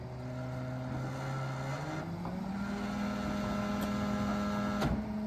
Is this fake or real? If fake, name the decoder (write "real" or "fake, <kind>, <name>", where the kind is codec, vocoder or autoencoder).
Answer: real